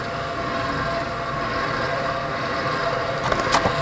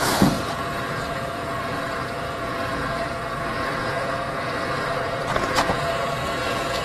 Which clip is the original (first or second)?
first